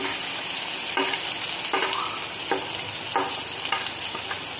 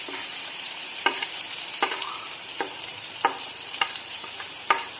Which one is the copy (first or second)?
second